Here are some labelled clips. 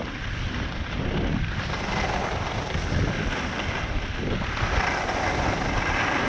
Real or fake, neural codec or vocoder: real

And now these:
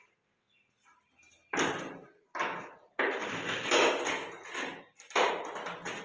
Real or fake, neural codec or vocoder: real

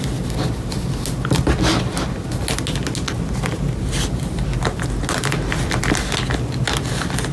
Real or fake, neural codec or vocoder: real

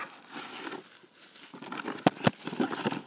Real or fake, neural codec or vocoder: real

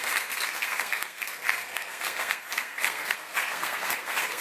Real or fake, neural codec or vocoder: fake, codec, SNAC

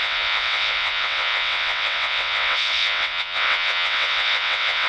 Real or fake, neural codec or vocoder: fake, vocoder, WaveNeXt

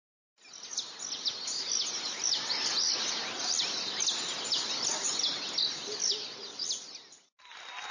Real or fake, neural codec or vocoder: real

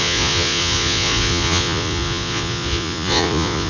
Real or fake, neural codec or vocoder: fake, vocoder, Vocos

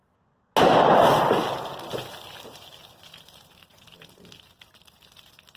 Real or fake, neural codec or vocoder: real